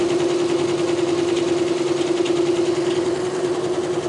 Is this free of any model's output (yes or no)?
yes